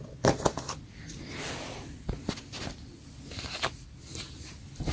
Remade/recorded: recorded